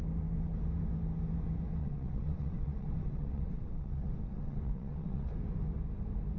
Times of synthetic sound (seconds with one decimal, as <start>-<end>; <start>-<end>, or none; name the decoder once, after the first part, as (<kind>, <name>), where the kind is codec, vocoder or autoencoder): 1.8-5.3 (vocoder, WaveNeXt)